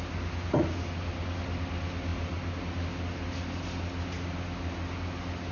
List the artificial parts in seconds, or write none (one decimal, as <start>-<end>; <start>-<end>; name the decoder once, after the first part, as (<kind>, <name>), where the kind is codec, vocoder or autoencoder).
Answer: none